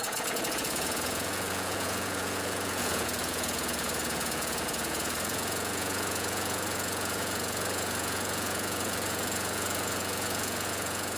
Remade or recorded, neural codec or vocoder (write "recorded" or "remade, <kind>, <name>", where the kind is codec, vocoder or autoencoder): remade, vocoder, Vocos